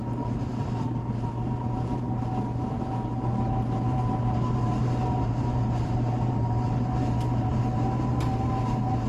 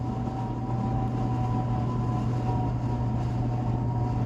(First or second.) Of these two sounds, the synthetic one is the first